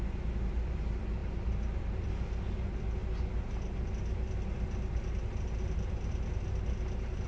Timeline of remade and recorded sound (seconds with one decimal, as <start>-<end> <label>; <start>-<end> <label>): 0.0-7.3 recorded